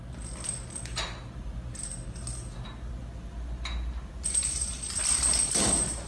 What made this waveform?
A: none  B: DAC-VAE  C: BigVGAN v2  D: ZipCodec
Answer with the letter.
A